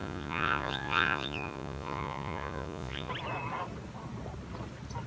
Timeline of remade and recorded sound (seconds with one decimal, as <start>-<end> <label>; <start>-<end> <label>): 0.0-3.1 remade; 3.1-5.1 recorded

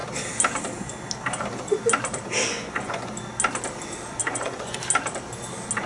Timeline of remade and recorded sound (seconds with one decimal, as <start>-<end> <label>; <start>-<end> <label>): 0.0-2.5 recorded; 2.5-3.1 remade; 3.1-4.2 recorded; 4.2-4.8 remade; 4.8-5.9 recorded

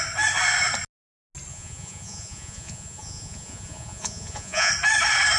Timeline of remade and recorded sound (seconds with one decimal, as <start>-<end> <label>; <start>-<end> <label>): 0.0-1.5 recorded; 1.5-4.7 remade; 4.7-5.4 recorded